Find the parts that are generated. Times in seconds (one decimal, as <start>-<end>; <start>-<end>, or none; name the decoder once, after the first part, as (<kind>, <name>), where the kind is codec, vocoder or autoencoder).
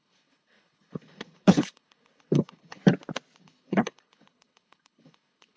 0.0-2.8 (codec, HILCodec); 3.4-5.6